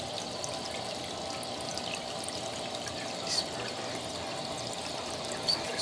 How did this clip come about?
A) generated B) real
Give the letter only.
B